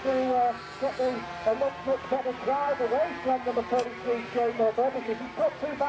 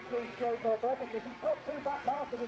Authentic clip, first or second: first